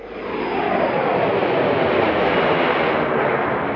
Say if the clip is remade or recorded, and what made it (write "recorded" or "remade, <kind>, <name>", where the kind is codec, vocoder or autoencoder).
recorded